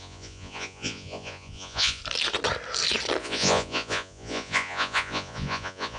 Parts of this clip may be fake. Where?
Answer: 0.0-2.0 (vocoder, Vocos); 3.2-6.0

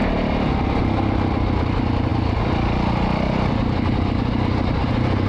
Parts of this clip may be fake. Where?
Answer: none

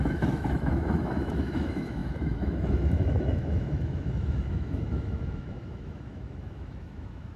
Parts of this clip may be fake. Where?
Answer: 0.0-7.4 (autoencoder, DAC-VAE)

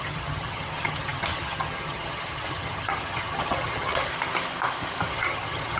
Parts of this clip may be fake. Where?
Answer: 0.0-4.1 (vocoder, HiFi-GAN); 5.1-5.8

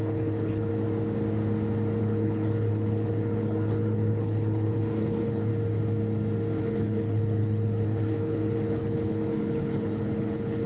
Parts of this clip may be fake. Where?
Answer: 0.0-0.7 (codec, HILCodec); 2.0-5.5; 6.6-10.7

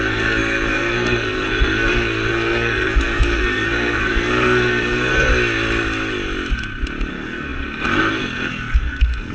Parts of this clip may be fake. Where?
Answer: 0.0-5.3 (codec, SNAC); 7.1-9.3